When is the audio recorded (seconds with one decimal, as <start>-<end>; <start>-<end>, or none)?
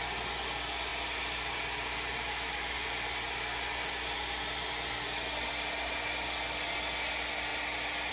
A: 0.0-8.1